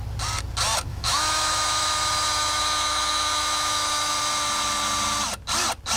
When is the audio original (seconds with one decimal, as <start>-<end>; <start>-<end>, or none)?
0.0-0.9; 4.1-6.0